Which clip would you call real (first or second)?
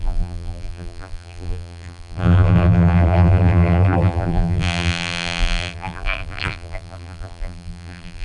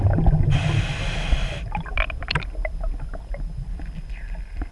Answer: second